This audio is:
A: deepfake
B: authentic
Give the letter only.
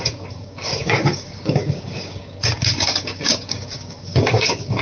A